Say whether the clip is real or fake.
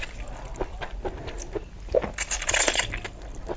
real